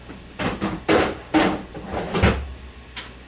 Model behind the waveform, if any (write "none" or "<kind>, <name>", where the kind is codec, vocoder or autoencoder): none